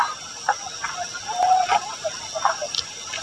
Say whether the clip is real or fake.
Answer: real